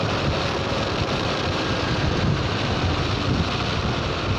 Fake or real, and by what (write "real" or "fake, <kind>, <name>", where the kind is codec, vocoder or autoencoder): real